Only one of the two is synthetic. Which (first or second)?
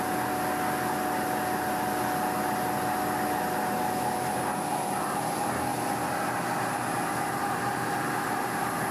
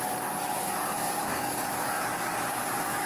second